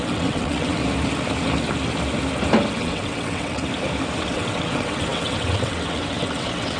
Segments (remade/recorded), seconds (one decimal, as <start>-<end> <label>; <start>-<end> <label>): 0.0-0.8 remade; 0.8-2.7 recorded; 2.7-3.6 remade; 3.6-4.2 recorded; 4.2-6.8 remade